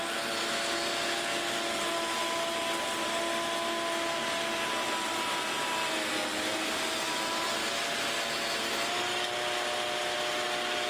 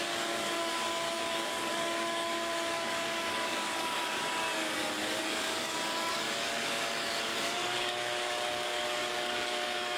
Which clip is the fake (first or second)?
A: second